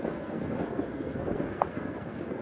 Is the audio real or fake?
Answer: fake